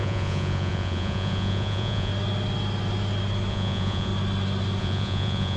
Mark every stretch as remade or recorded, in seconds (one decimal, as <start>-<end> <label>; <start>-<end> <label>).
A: 0.0-2.1 remade; 2.1-3.5 recorded; 3.5-4.1 remade; 4.1-4.8 recorded; 4.8-5.6 remade